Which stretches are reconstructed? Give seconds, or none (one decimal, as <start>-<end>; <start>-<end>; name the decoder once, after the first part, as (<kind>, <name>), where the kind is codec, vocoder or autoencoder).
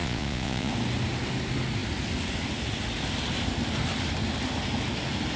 0.0-0.7 (vocoder, Vocos)